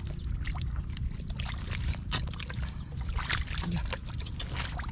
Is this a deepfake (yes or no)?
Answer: no